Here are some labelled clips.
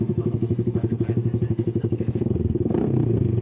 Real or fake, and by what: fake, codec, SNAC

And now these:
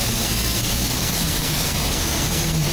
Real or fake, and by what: fake, codec, SNAC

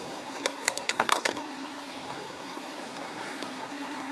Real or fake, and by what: fake, codec, SNAC